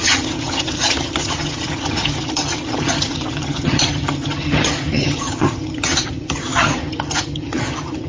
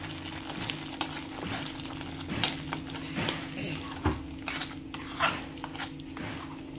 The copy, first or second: first